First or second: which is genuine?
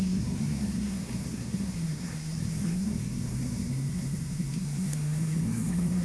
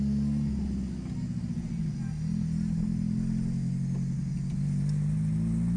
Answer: second